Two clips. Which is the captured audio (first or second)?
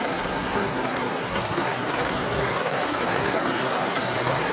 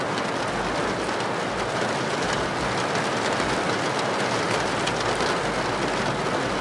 second